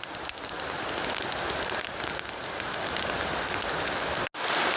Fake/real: real